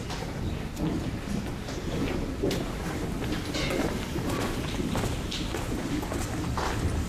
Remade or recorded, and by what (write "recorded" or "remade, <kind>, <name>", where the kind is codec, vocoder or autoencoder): recorded